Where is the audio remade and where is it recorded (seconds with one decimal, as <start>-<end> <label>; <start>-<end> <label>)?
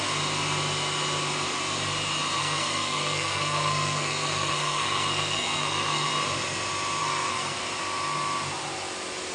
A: 0.0-2.4 recorded; 2.4-6.1 remade; 6.1-7.0 recorded; 7.0-7.6 remade; 7.6-9.3 recorded